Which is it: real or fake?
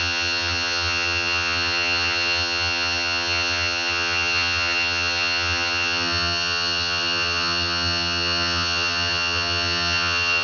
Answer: fake